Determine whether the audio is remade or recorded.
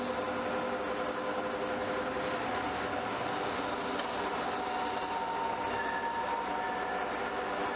recorded